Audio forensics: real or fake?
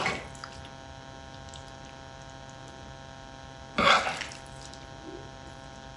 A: real